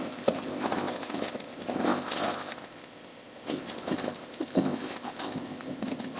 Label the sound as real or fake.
fake